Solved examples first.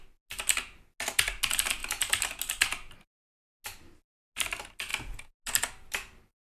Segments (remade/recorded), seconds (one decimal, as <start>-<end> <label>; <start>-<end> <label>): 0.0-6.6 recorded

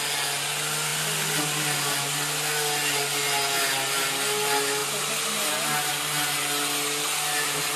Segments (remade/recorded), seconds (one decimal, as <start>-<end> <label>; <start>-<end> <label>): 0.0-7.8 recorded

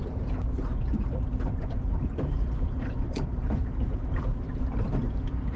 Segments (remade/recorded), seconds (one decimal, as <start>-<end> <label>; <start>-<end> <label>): 0.0-1.3 recorded; 1.3-4.7 remade; 4.7-5.6 recorded

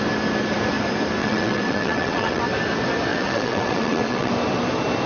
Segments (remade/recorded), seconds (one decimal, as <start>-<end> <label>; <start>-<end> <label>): 0.0-1.2 recorded; 1.2-2.4 remade; 2.4-3.1 recorded; 3.1-4.3 remade; 4.3-5.1 recorded

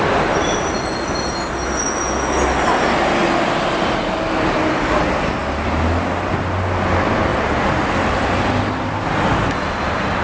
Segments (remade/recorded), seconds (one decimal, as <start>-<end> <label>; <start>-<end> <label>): 0.0-10.2 recorded

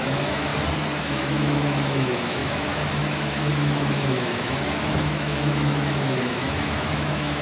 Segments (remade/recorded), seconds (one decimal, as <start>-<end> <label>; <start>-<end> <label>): 0.0-0.5 remade; 0.5-1.0 recorded; 1.0-7.4 remade